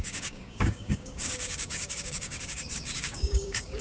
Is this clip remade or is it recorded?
remade